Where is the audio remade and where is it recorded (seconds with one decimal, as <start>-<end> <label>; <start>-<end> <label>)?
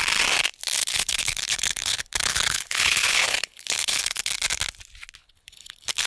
0.0-0.8 recorded; 0.8-4.3 remade; 4.3-5.2 recorded; 5.2-6.1 remade